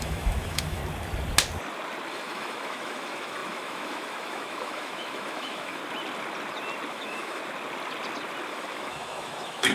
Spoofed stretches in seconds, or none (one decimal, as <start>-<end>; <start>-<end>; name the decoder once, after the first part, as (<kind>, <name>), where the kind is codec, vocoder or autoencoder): 0.0-0.8 (autoencoder, DAC-VAE); 2.1-5.8; 6.9-7.4; 8.5-9.7